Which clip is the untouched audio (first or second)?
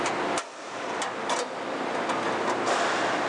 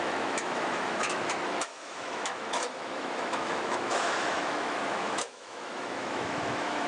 first